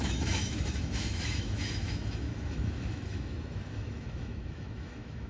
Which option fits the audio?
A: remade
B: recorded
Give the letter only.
A